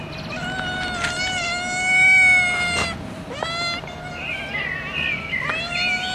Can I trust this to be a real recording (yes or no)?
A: yes